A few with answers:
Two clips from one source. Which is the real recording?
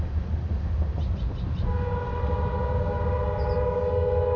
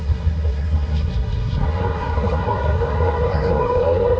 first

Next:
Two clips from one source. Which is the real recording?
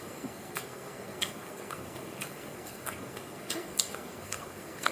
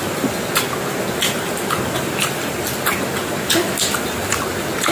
second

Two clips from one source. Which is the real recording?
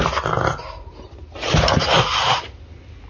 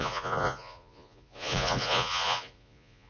first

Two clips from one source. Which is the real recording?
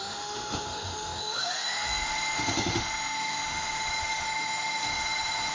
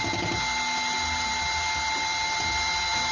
second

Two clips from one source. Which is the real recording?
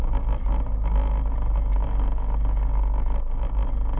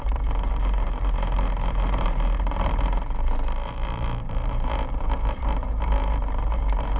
first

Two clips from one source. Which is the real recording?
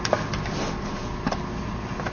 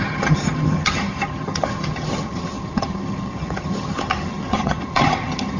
first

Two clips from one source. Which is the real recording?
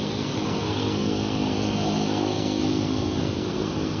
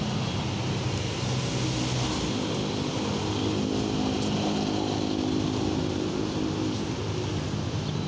second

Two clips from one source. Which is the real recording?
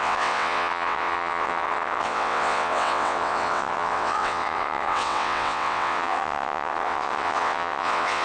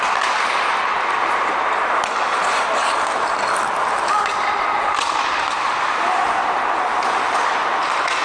second